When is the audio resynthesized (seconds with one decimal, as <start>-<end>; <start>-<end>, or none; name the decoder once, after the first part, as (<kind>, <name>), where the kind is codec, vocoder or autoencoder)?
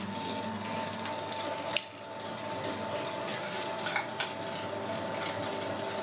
none